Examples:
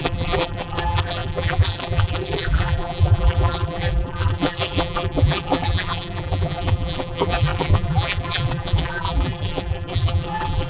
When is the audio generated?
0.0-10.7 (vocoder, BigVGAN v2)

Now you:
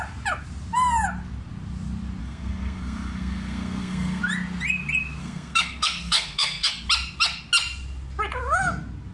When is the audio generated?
2.2-4.2 (codec, SNAC); 5.2-6.7